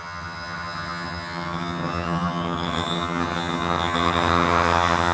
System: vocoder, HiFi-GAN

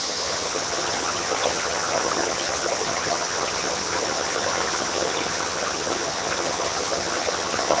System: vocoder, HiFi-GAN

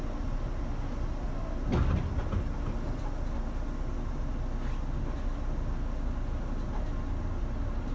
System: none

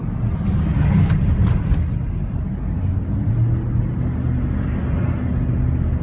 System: none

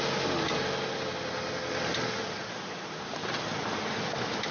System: none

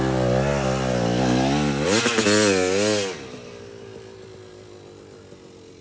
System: none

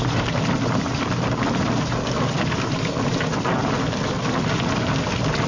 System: none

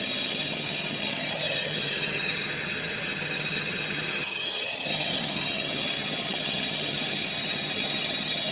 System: vocoder, HiFi-GAN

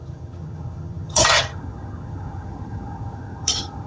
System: vocoder, HiFi-GAN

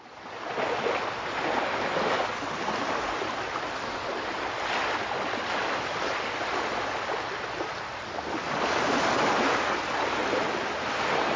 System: none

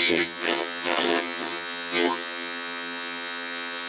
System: vocoder, HiFi-GAN